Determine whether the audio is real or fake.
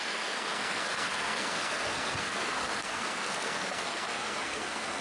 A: fake